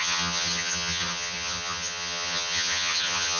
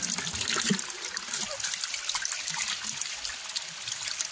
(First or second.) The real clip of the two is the second